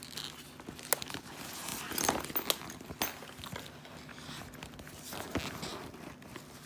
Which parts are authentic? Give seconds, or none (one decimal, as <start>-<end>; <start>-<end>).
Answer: 0.0-6.7